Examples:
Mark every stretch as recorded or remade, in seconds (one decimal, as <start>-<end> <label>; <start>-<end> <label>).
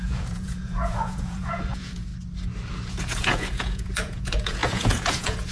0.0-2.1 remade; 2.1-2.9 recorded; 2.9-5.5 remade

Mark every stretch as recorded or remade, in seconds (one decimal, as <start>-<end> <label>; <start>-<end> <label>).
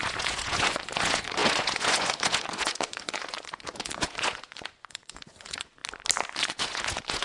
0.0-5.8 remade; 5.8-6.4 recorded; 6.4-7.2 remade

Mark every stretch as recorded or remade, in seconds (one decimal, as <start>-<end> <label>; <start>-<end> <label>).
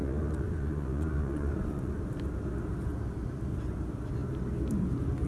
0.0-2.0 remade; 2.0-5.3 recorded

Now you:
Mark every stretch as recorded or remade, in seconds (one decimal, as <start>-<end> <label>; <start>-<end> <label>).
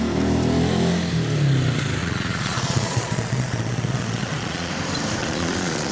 0.0-2.0 recorded; 2.0-4.7 remade; 4.7-5.2 recorded; 5.2-5.9 remade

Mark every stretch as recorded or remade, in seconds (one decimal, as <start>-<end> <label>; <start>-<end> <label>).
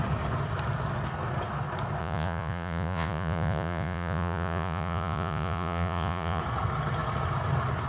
0.0-2.0 recorded; 2.0-6.4 remade; 6.4-7.9 recorded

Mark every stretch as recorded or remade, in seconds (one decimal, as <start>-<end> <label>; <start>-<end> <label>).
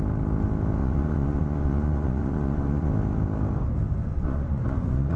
0.0-0.8 recorded; 0.8-2.9 remade; 2.9-4.0 recorded; 4.0-5.2 remade